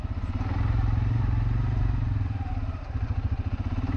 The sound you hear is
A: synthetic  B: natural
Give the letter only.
A